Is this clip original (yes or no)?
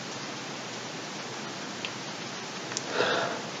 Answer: yes